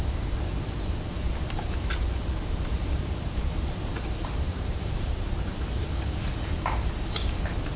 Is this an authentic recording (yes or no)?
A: no